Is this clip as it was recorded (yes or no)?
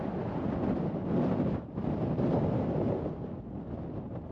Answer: yes